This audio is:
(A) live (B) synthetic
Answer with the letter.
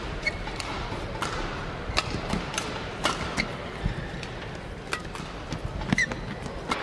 A